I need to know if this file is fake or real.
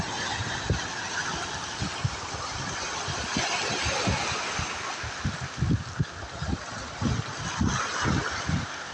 real